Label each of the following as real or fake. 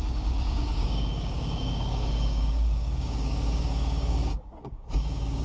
fake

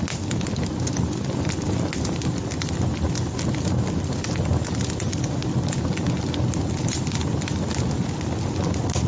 real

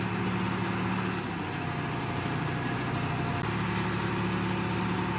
real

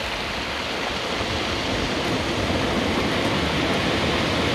real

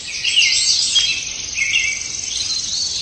real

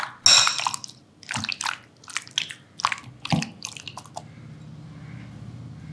real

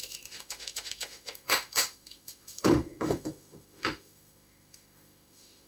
fake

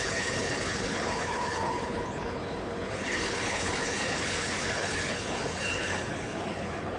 fake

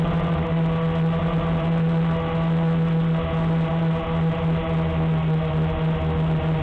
real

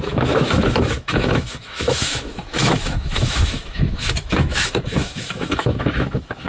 fake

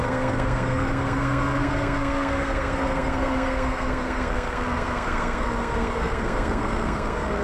fake